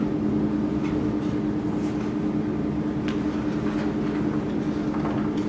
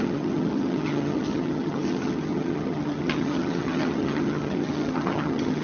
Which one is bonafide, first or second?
first